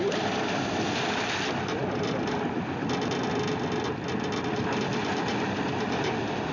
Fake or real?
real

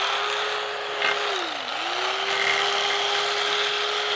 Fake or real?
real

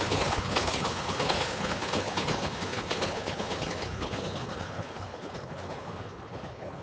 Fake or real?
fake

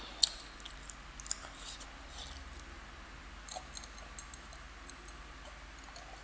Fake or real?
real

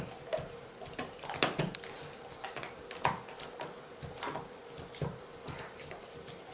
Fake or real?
real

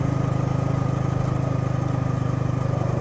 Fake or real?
real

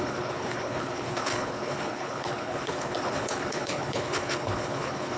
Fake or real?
fake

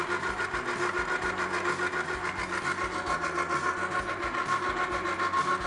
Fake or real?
real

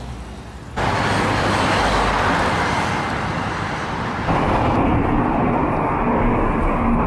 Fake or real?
real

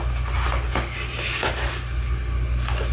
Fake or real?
real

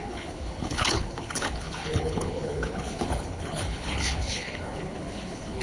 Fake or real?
fake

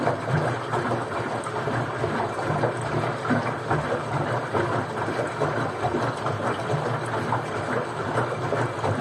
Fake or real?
real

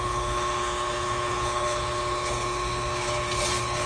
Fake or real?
fake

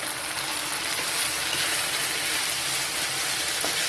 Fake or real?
real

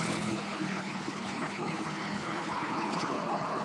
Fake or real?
fake